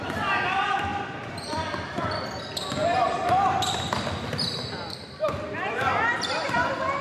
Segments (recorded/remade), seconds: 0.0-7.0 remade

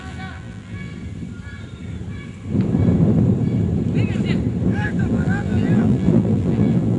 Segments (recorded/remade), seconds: 0.0-0.9 remade; 0.9-5.1 recorded; 5.1-7.0 remade

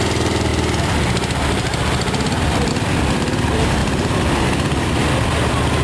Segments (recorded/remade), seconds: 0.0-5.8 recorded

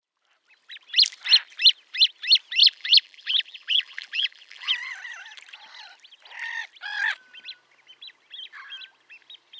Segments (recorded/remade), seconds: 0.0-2.6 recorded; 2.6-4.7 remade; 4.7-9.6 recorded